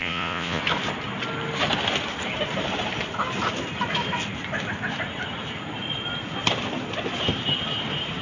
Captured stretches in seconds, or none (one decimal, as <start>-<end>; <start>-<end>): 0.6-8.2